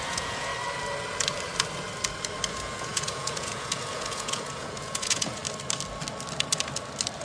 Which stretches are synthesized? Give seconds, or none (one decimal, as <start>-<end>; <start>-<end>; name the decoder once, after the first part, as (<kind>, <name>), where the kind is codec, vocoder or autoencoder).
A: 0.0-0.5 (vocoder, Vocos); 2.5-5.4